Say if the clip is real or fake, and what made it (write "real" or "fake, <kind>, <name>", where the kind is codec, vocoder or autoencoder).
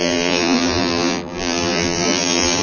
fake, vocoder, BigVGAN v2